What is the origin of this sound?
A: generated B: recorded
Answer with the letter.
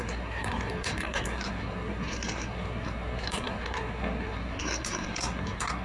A